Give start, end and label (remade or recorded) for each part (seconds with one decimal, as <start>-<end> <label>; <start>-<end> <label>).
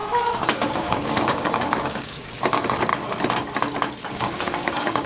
0.0-2.9 remade; 2.9-4.1 recorded; 4.1-5.1 remade